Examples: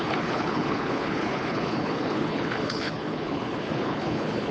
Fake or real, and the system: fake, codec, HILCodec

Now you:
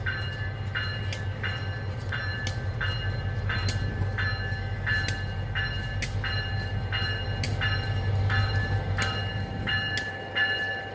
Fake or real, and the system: real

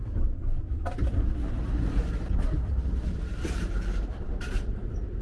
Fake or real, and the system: real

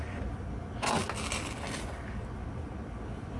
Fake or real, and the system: real